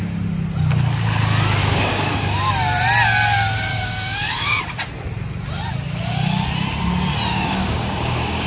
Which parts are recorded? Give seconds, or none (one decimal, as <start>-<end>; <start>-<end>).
0.0-1.6; 2.5-3.7; 4.6-7.3